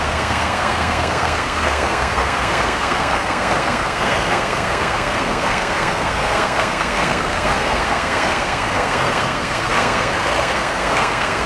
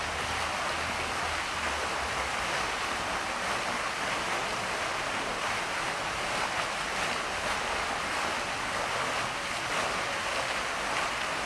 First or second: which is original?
second